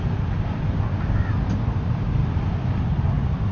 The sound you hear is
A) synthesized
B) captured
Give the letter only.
A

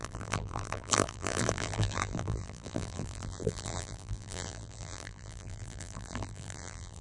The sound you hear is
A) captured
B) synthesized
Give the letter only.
B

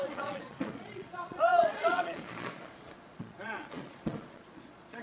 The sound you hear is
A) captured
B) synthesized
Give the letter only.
B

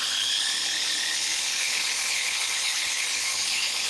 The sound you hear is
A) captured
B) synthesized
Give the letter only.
B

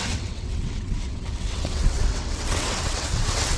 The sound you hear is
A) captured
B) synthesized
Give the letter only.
B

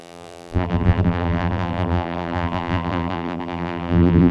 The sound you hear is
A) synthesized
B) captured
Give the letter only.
A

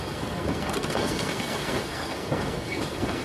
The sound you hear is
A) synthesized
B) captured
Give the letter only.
A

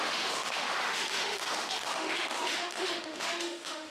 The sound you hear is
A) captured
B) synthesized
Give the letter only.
B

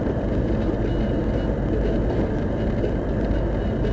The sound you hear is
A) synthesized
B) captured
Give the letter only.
B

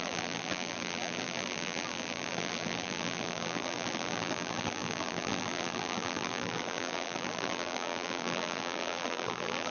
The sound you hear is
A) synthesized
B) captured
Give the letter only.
A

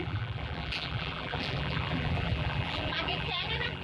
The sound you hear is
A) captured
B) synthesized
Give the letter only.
B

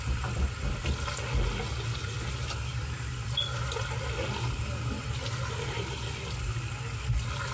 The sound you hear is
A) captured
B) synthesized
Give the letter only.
A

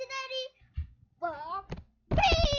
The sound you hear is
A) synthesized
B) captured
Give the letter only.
B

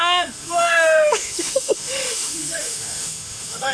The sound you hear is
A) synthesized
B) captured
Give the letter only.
A